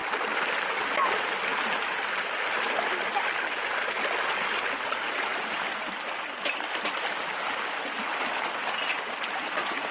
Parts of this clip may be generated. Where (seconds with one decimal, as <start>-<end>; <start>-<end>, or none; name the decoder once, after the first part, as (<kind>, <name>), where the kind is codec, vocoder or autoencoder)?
none

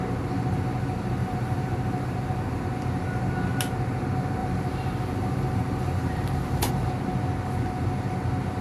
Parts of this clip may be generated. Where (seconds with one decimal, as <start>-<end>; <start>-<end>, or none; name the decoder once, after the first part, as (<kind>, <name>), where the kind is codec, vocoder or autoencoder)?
1.2-2.6 (vocoder, BigVGAN v2); 4.4-6.7

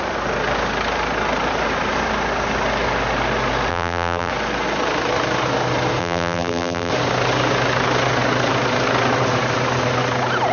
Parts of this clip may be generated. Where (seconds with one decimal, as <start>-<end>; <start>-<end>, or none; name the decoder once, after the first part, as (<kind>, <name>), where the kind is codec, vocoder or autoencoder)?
3.7-4.3 (vocoder, BigVGAN v2); 6.0-6.9